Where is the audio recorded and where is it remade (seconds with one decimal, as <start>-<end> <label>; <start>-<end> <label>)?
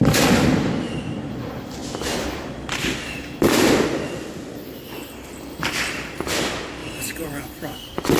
0.0-1.8 remade; 1.8-4.5 recorded; 4.5-8.2 remade